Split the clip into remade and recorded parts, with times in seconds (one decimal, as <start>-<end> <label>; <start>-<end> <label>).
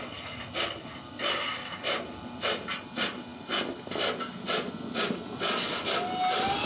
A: 0.0-6.7 recorded